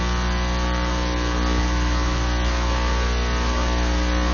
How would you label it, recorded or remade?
recorded